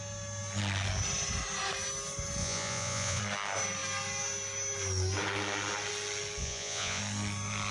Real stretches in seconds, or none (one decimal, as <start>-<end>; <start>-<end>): 0.0-2.4; 3.2-6.4; 7.0-7.7